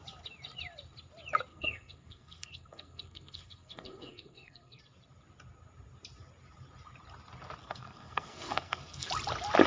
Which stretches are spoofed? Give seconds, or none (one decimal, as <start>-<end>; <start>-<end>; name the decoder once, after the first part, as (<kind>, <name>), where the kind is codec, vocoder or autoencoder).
1.5-4.8 (codec, SNAC); 7.6-9.1